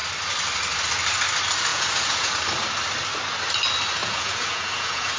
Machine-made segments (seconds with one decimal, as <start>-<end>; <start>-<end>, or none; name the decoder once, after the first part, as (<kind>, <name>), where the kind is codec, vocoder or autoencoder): 1.7-2.3 (vocoder, Vocos); 4.0-5.2

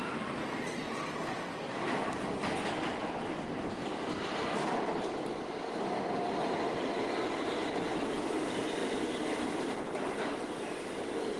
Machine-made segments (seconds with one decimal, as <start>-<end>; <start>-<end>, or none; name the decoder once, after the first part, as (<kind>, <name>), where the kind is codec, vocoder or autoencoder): none